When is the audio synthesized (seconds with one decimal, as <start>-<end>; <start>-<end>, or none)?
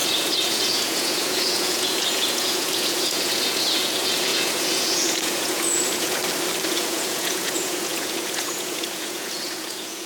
0.0-6.2; 6.7-10.1